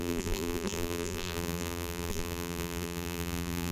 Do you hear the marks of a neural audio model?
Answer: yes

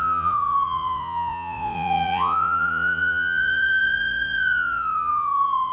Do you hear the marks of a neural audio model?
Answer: yes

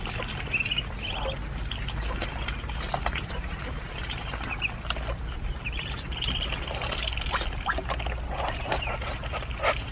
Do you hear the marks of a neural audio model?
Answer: no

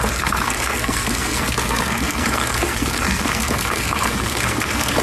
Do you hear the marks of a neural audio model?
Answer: yes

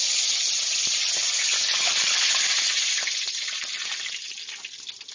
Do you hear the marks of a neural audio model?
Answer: no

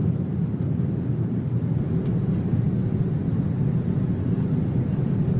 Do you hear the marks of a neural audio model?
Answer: no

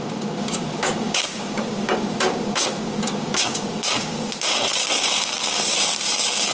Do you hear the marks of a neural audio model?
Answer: yes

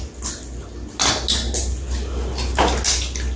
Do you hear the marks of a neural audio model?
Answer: no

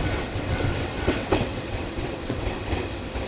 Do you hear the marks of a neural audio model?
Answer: yes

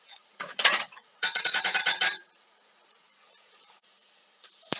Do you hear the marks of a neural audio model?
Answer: yes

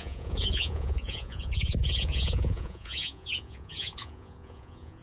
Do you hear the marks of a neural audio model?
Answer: yes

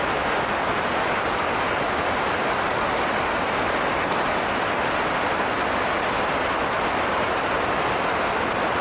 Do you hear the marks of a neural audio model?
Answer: no